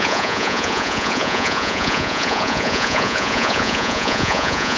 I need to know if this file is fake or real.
fake